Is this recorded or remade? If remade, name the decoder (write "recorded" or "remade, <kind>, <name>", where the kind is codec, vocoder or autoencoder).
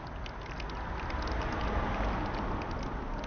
recorded